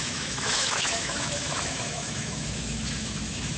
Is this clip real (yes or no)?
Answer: no